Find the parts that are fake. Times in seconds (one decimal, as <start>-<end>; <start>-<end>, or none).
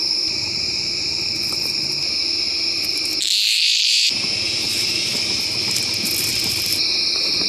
0.0-1.3; 6.3-7.5